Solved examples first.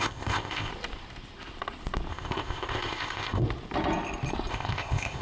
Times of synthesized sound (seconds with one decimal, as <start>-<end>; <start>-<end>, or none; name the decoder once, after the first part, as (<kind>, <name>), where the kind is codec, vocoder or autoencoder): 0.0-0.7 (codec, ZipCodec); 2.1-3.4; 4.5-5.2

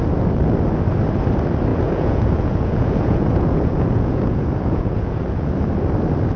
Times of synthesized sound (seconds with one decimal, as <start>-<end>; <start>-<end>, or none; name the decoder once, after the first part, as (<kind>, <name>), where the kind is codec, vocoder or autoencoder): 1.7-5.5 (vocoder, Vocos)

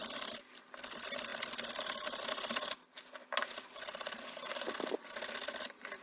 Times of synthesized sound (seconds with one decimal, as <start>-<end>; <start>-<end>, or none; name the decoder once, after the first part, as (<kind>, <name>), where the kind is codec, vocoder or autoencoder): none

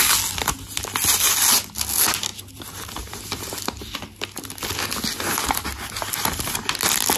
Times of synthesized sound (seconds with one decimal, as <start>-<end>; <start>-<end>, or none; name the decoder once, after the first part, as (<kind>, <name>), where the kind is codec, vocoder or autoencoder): none

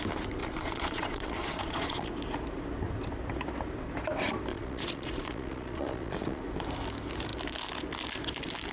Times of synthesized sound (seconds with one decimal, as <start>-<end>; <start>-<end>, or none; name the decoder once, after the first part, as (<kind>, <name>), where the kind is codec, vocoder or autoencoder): 0.4-2.1 (vocoder, Vocos); 4.5-6.4

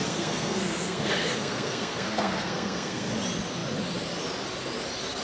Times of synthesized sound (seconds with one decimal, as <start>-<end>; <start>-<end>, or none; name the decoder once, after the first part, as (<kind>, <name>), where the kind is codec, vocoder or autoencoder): 0.0-3.1 (codec, SNAC)

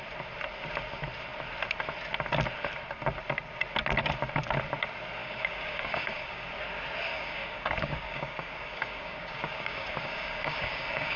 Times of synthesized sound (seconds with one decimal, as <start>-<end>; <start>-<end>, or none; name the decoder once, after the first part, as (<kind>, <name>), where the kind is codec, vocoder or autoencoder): 5.2-6.5 (codec, DAC); 7.1-11.2

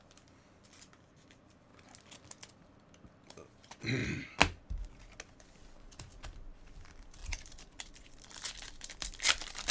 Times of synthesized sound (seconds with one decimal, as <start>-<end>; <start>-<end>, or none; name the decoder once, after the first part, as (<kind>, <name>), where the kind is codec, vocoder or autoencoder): 0.0-1.7 (vocoder, BigVGAN v2); 3.2-4.0; 5.4-9.7